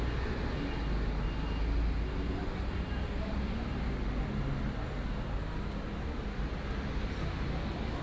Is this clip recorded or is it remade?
recorded